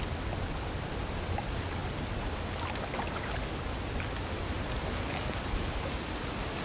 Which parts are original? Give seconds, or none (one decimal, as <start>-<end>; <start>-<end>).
0.0-6.6